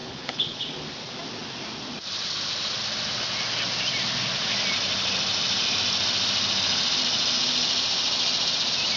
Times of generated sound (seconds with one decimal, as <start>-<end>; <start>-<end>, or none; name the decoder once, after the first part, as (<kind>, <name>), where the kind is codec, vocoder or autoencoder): 0.0-0.7 (codec, HILCodec)